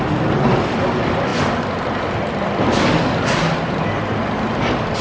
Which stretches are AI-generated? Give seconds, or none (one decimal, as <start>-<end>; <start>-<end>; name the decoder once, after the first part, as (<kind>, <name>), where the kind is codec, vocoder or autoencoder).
none